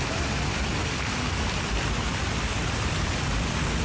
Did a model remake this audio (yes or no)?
yes